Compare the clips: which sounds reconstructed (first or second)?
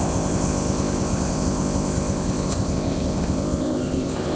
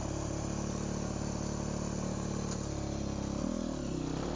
first